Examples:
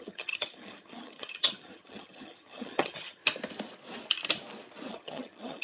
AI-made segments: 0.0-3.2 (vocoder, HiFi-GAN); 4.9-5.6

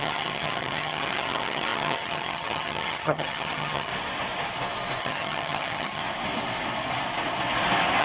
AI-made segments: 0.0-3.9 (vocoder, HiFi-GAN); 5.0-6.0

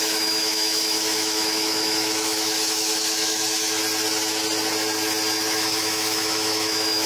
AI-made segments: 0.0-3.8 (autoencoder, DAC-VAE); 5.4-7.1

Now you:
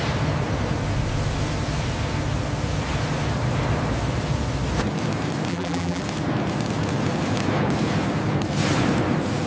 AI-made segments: 5.5-6.0 (vocoder, BigVGAN v2)

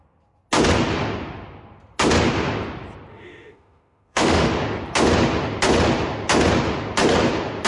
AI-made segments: 3.1-4.5 (autoencoder, DAC-VAE)

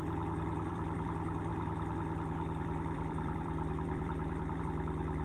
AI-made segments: 0.0-5.2 (vocoder, BigVGAN v2)

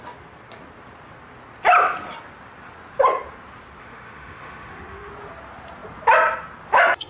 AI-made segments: 3.8-5.1 (autoencoder, DAC-VAE)